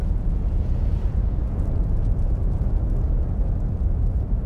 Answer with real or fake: fake